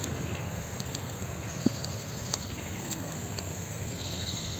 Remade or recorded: remade